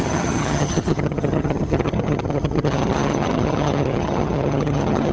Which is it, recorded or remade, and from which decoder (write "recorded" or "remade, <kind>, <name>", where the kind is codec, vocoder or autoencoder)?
remade, vocoder, HiFi-GAN